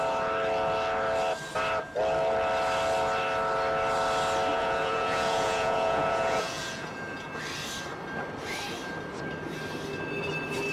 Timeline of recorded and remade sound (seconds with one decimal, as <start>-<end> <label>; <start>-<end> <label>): 0.0-4.5 recorded; 4.5-7.3 remade; 7.3-10.7 recorded